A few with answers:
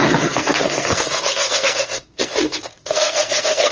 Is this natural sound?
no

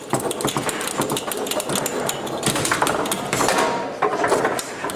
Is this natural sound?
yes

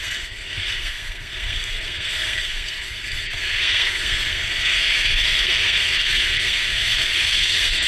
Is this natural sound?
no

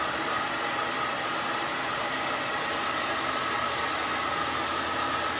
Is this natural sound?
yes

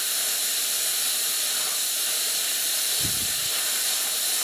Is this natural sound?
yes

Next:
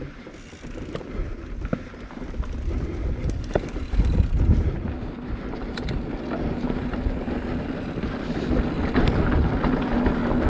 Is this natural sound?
yes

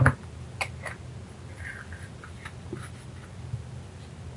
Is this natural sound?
yes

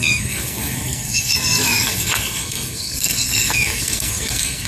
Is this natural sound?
no